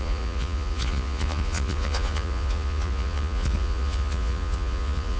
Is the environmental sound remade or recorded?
remade